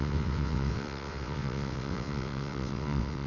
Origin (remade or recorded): remade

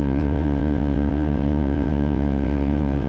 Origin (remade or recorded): remade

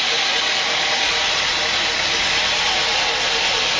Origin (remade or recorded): recorded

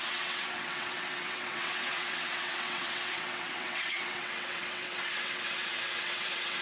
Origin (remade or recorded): remade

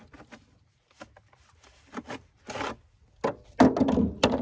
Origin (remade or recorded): recorded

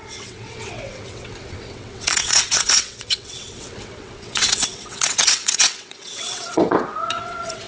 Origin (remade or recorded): remade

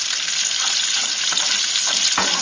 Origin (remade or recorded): recorded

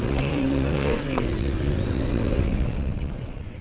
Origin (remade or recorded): remade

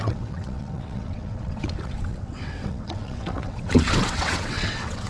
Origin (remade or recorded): remade